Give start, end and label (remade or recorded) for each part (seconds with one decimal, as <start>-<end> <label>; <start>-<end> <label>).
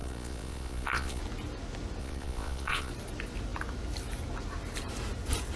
0.0-1.2 remade; 1.2-2.0 recorded; 2.0-2.9 remade; 2.9-5.6 recorded